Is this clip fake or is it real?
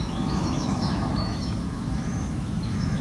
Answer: fake